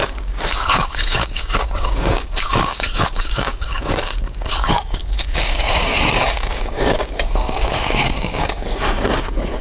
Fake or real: fake